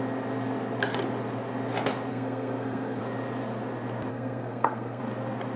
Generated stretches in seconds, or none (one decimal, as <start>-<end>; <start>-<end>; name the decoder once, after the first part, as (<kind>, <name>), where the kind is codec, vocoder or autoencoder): 2.1-3.0 (codec, SNAC); 4.1-5.0